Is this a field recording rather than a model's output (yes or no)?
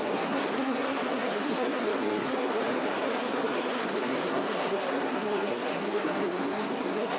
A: no